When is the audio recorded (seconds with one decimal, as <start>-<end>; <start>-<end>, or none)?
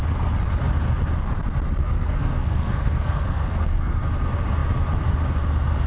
0.0-1.8; 4.0-5.9